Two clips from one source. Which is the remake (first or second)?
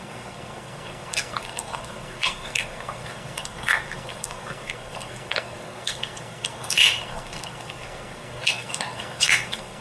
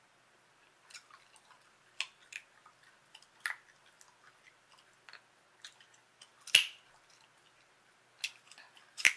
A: first